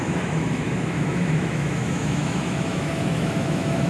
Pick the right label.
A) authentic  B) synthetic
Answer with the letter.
B